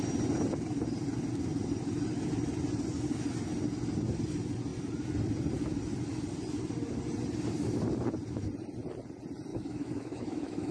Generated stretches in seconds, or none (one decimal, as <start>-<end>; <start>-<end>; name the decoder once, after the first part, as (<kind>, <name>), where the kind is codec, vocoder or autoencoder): 9.5-10.7 (autoencoder, DAC-VAE)